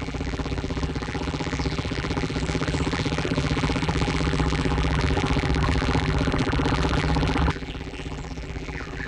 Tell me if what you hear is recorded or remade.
remade